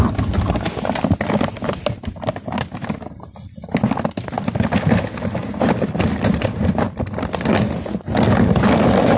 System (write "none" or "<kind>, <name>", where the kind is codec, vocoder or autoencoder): none